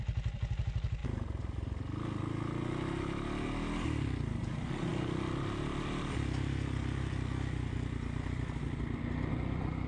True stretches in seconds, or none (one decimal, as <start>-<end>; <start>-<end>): 0.0-9.9